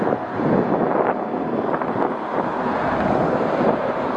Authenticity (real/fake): real